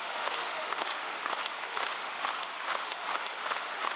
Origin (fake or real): fake